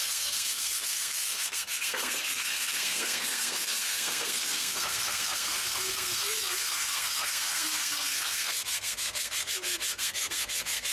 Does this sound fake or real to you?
fake